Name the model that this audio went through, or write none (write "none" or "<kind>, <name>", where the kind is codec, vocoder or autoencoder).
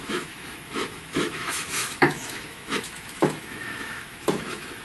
autoencoder, DAC-VAE